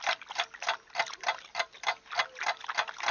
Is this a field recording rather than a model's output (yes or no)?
yes